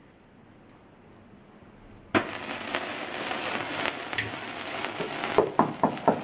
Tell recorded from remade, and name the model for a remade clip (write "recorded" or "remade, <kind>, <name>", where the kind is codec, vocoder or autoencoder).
recorded